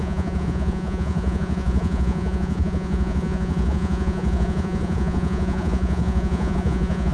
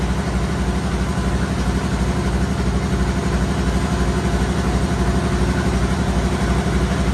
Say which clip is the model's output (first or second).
first